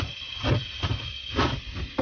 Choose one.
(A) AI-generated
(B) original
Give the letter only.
B